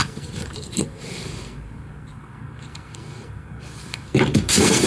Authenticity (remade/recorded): remade